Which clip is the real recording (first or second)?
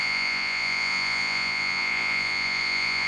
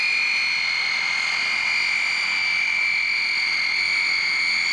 second